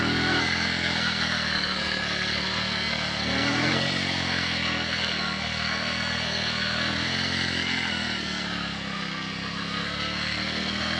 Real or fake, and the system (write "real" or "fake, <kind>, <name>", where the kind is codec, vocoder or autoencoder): fake, codec, SNAC